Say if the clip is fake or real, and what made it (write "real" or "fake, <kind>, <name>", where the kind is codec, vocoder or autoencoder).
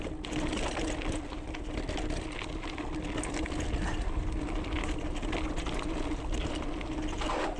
real